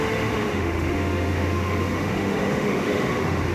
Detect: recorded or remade remade